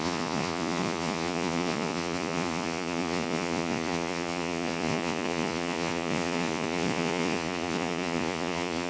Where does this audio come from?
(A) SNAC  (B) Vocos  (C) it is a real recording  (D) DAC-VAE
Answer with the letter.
B